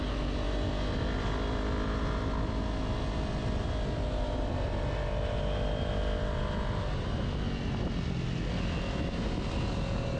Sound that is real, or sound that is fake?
real